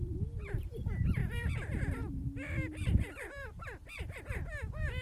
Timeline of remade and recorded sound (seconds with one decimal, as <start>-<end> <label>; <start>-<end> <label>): 0.0-1.2 recorded; 1.2-4.2 remade; 4.2-5.0 recorded